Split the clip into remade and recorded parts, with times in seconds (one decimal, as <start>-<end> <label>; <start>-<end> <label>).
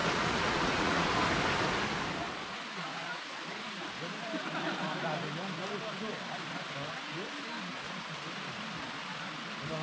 0.0-1.1 remade; 1.1-2.9 recorded; 2.9-3.9 remade; 3.9-7.7 recorded; 7.7-8.2 remade; 8.2-9.8 recorded